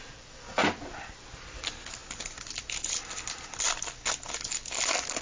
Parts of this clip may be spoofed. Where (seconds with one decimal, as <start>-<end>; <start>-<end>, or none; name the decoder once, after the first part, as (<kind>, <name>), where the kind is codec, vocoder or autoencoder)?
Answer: none